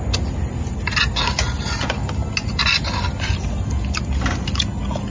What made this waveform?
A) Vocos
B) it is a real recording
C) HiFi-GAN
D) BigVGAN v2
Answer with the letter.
B